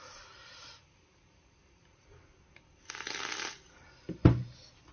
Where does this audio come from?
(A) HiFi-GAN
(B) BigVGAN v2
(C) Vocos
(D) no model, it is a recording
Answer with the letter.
D